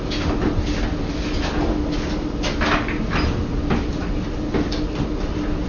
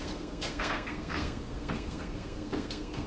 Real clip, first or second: first